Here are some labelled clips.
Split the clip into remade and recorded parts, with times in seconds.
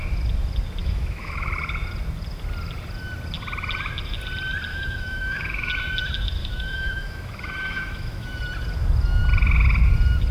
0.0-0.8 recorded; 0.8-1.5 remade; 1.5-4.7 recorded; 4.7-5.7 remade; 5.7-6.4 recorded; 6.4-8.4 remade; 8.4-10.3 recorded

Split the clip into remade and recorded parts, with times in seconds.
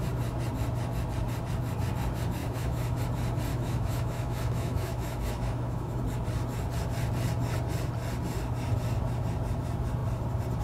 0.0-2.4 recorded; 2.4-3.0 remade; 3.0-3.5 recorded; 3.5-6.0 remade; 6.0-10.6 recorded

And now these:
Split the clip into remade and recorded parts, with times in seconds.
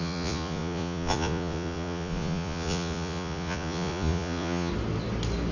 0.0-4.7 remade; 4.7-5.5 recorded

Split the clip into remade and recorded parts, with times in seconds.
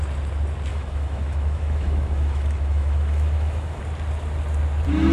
0.0-0.7 recorded; 0.7-3.8 remade; 3.8-5.1 recorded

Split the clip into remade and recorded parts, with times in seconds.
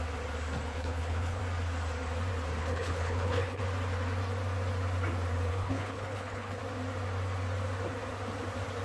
0.0-0.7 recorded; 0.7-1.4 remade; 1.4-2.6 recorded; 2.6-3.6 remade; 3.6-5.5 recorded; 5.5-6.6 remade; 6.6-8.8 recorded